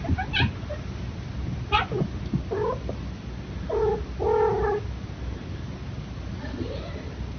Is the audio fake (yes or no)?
no